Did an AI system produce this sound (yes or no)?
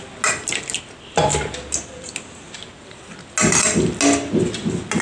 no